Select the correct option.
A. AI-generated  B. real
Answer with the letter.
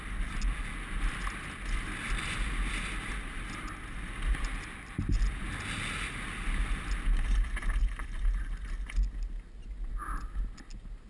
B